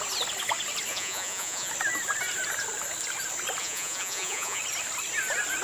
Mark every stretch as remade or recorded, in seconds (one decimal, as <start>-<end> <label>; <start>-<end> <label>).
0.0-0.9 recorded; 0.9-1.7 remade; 1.7-3.6 recorded; 3.6-4.6 remade; 4.6-5.6 recorded